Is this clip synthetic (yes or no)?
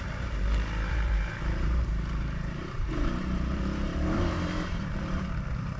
yes